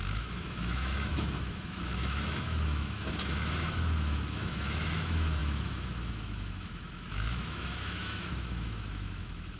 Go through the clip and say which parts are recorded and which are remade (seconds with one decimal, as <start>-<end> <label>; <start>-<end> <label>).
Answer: 0.0-9.6 remade